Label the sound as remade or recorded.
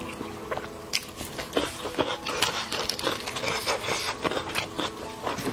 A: recorded